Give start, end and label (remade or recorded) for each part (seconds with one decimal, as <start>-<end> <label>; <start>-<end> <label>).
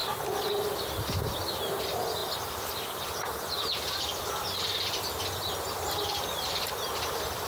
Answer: 0.0-7.5 recorded